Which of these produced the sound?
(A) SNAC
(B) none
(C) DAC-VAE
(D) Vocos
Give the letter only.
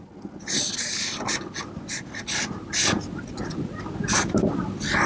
B